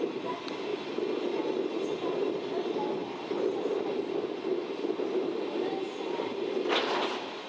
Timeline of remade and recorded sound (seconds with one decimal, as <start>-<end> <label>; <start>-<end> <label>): 0.0-7.5 recorded